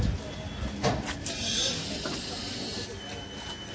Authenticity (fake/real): real